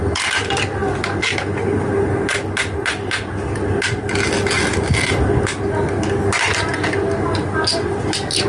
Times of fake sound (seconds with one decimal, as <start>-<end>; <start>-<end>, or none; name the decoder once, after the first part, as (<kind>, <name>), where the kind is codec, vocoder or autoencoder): none